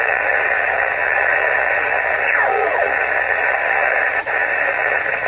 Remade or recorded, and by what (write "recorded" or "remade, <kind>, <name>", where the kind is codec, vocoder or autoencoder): remade, vocoder, Vocos